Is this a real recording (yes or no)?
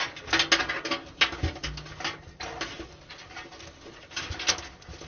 yes